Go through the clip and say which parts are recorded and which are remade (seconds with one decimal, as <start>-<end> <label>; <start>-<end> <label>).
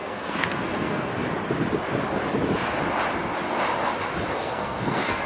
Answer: 0.0-1.1 remade; 1.1-4.3 recorded; 4.3-5.3 remade